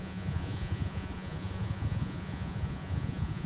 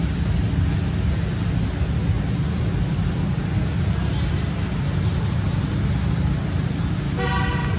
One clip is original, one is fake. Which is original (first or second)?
second